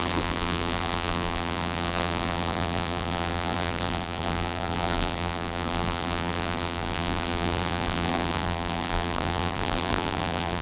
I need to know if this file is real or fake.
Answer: fake